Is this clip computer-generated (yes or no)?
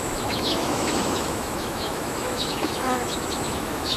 yes